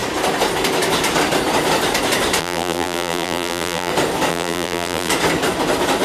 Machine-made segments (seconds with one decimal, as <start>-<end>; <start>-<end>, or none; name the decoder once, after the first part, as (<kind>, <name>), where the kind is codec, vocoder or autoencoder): 2.4-3.9 (vocoder, BigVGAN v2); 4.3-5.1